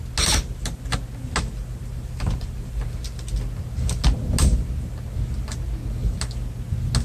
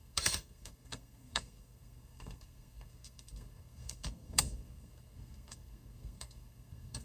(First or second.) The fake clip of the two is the second